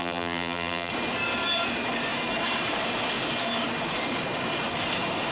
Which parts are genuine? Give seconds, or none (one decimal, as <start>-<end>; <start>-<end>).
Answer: 0.9-5.3